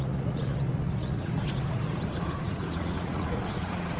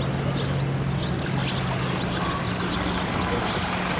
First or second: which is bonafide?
second